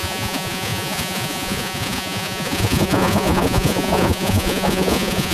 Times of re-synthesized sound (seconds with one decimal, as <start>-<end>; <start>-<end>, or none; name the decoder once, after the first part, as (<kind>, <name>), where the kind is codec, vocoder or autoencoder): 0.0-5.3 (vocoder, Vocos)